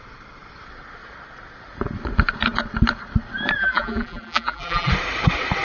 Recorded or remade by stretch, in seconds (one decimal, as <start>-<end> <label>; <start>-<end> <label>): 0.0-3.6 recorded; 3.6-4.9 remade; 4.9-5.6 recorded